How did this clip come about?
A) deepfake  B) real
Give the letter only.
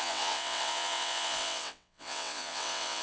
A